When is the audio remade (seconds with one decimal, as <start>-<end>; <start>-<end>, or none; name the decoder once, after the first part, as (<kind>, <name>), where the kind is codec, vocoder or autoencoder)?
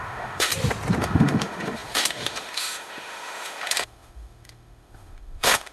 0.0-0.5 (autoencoder, DAC-VAE); 1.0-5.7